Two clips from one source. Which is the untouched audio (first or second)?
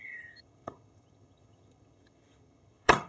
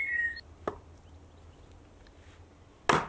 second